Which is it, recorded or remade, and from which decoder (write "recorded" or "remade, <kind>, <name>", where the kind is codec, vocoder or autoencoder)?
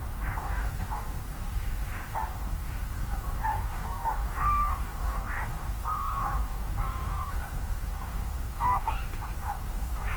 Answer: remade, codec, DAC